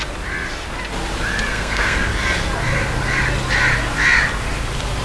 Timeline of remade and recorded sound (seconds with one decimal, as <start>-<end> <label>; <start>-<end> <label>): 0.0-1.5 recorded; 1.5-2.1 remade; 2.1-5.0 recorded